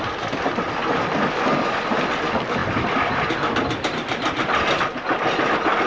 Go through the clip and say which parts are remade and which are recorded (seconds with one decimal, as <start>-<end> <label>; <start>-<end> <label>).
0.0-0.8 recorded; 0.8-1.8 remade; 1.8-2.6 recorded; 2.6-4.9 remade; 4.9-5.9 recorded